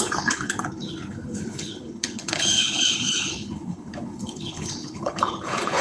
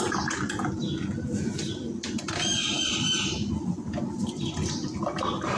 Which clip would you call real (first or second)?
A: second